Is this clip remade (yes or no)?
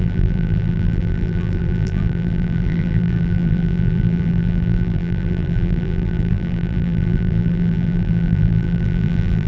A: yes